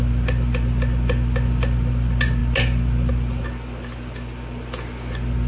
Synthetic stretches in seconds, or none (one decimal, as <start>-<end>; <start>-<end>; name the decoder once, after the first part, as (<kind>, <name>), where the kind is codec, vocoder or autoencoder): none